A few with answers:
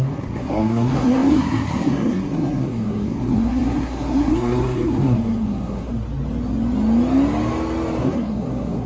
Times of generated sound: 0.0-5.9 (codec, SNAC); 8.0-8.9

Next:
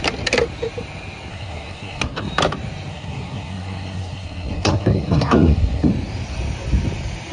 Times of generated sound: 1.3-2.3 (codec, SNAC); 2.9-5.9